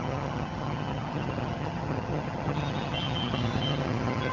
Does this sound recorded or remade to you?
remade